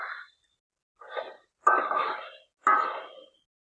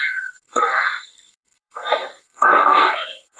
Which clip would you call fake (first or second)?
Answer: second